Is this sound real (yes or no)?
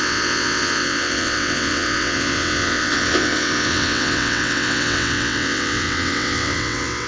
no